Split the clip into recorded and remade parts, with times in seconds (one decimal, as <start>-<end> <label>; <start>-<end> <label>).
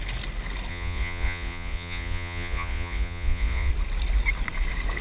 0.0-0.7 recorded; 0.7-3.7 remade; 3.7-5.0 recorded